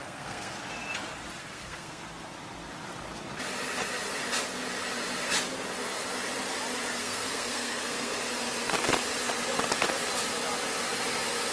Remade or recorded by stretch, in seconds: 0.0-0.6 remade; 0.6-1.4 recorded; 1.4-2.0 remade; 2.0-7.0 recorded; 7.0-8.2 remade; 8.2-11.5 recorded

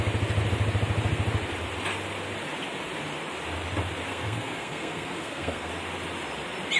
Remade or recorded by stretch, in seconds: 0.0-4.1 recorded; 4.1-5.7 remade; 5.7-6.8 recorded

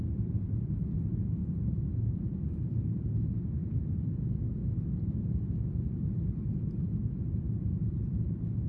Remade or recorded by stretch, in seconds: 0.0-8.7 recorded